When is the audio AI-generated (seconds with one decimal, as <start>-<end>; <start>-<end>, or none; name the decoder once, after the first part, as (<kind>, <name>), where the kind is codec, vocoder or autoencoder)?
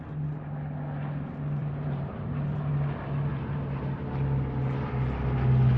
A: 1.6-2.7 (vocoder, BigVGAN v2); 3.3-3.8